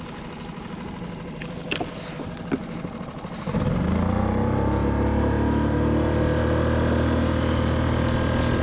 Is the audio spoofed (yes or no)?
no